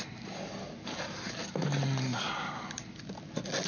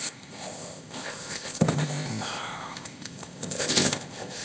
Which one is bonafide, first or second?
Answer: first